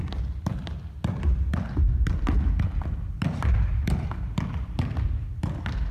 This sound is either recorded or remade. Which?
recorded